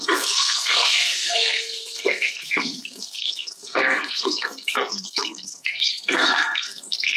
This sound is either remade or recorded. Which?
remade